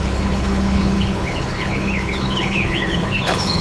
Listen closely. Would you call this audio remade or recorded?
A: remade